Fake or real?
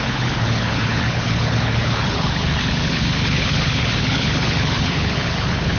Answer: fake